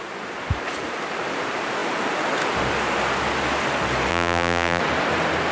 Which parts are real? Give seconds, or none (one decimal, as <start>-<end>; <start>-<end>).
0.0-4.1; 4.8-5.5